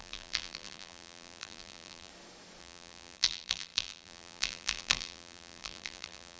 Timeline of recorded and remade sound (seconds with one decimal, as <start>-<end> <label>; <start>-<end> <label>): 0.0-2.1 remade; 2.1-2.6 recorded; 2.6-6.4 remade